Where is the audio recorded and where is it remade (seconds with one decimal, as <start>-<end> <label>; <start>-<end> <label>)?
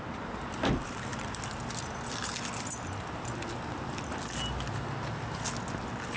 0.0-6.2 recorded